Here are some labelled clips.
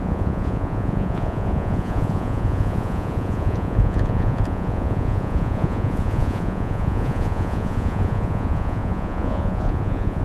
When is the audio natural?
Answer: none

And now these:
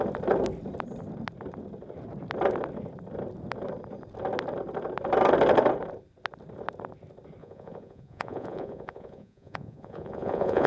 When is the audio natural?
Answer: 0.0-7.4